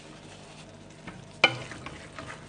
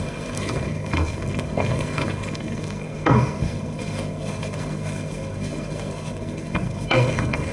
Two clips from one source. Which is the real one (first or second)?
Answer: first